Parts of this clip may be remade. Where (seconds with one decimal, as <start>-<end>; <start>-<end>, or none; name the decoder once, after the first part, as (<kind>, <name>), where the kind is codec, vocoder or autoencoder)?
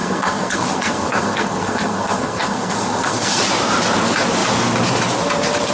0.0-3.4 (codec, SNAC)